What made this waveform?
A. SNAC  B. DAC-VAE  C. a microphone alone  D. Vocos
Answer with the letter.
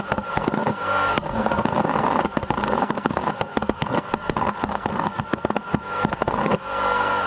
A